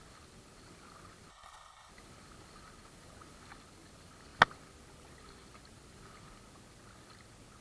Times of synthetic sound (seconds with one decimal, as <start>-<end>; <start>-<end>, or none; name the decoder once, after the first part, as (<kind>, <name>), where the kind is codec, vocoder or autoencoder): 1.3-1.9 (codec, HILCodec)